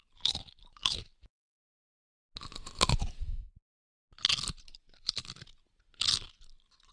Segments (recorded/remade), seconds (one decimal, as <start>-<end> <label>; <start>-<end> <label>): 0.0-6.9 recorded